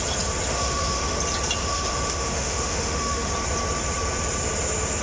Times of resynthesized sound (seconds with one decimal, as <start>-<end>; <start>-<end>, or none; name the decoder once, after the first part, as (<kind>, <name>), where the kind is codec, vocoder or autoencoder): 0.5-1.2 (autoencoder, DAC-VAE); 1.6-3.3